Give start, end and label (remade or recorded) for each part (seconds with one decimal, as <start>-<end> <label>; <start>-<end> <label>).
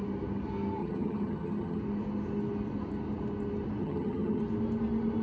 0.0-0.8 recorded; 0.8-1.8 remade; 1.8-3.8 recorded; 3.8-4.4 remade; 4.4-5.2 recorded